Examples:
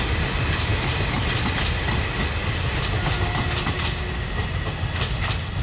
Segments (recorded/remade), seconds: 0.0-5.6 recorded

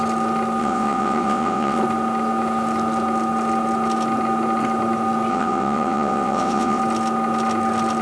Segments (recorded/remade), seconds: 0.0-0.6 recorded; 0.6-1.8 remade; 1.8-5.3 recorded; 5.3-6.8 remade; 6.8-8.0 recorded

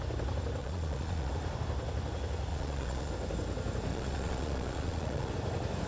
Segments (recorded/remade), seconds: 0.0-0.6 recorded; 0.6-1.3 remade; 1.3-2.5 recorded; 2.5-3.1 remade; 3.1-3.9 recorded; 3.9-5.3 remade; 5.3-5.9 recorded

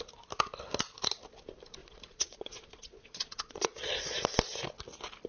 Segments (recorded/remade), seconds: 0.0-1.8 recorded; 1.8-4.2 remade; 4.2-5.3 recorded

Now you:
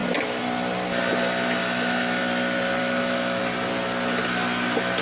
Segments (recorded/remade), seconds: 0.0-1.6 recorded; 1.6-2.2 remade; 2.2-2.8 recorded; 2.8-3.4 remade; 3.4-5.0 recorded

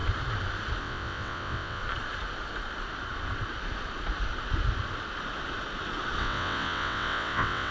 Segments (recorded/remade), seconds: 0.0-0.8 recorded; 0.8-1.8 remade; 1.8-6.2 recorded; 6.2-7.7 remade

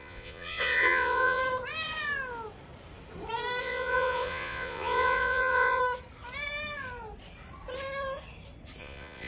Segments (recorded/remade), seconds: 0.0-1.4 remade; 1.4-3.6 recorded; 3.6-5.8 remade; 5.8-8.8 recorded; 8.8-9.3 remade

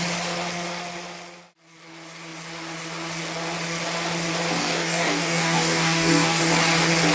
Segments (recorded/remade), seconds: 0.0-4.6 recorded; 4.6-6.4 remade; 6.4-7.1 recorded